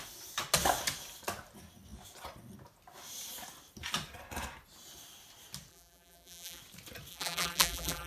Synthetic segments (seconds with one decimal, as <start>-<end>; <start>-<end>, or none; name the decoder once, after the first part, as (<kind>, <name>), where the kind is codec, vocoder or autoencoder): 5.7-6.6 (vocoder, BigVGAN v2); 7.1-8.1